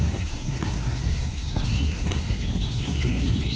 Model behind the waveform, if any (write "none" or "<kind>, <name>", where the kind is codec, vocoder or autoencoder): codec, SNAC